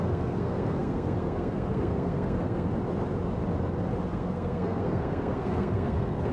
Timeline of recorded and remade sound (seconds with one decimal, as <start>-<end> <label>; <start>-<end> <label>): 0.0-2.7 remade; 2.7-4.1 recorded; 4.1-6.3 remade